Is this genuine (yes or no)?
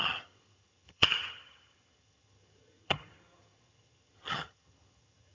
no